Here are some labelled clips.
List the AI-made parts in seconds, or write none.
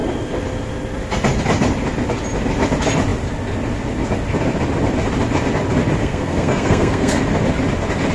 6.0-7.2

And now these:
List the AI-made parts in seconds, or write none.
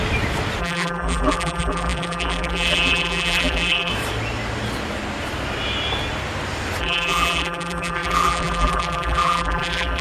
0.6-3.9; 6.8-10.0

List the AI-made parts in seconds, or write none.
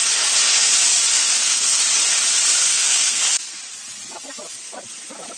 1.2-1.8; 2.6-3.6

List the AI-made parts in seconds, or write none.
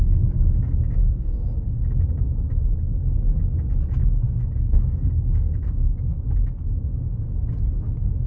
1.0-1.8; 4.0-6.1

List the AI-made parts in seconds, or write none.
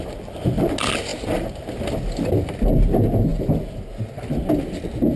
none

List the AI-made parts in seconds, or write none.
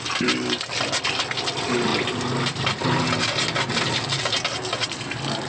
none